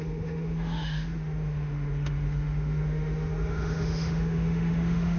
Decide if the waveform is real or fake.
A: fake